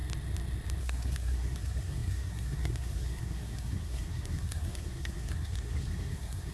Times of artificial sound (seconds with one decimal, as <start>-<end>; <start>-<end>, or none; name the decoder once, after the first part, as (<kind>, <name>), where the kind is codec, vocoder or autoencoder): 0.8-6.5 (codec, SNAC)